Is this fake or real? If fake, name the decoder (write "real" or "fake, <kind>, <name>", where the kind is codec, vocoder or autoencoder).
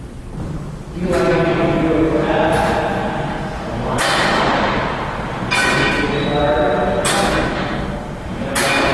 real